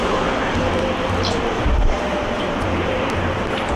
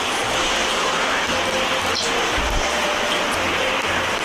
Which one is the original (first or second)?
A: second